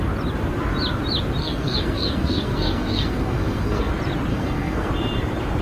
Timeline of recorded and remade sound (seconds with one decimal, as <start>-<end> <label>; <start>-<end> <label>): 0.0-1.4 recorded; 1.4-3.9 remade; 3.9-4.3 recorded; 4.3-4.9 remade; 4.9-5.6 recorded